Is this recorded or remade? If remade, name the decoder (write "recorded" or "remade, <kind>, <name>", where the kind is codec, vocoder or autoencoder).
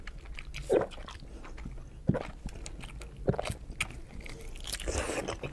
recorded